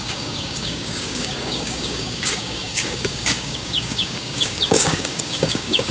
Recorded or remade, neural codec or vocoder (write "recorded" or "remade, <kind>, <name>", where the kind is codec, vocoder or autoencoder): remade, codec, DAC